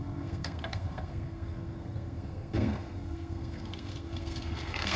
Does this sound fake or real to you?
fake